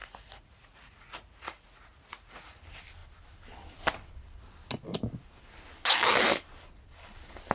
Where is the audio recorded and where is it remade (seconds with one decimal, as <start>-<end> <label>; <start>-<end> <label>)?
0.0-2.6 remade; 2.6-7.5 recorded